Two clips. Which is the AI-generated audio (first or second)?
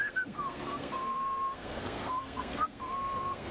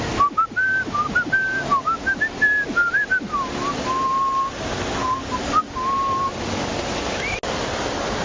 first